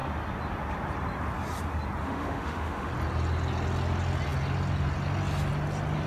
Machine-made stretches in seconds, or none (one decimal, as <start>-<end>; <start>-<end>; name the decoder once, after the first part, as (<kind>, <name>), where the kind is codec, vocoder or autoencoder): 2.0-2.9 (autoencoder, DAC-VAE)